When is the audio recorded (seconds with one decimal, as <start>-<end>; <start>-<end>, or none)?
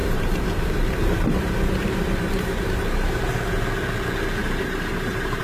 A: 3.2-4.4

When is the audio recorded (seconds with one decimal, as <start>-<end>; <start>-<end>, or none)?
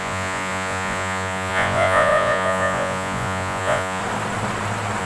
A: 4.0-5.0